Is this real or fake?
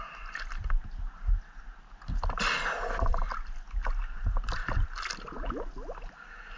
real